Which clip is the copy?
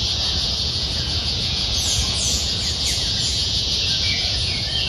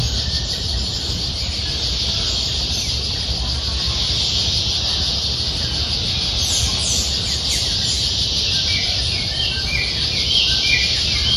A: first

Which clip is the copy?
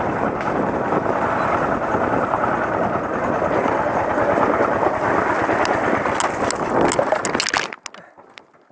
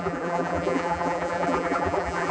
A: second